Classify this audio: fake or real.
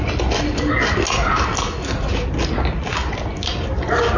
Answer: real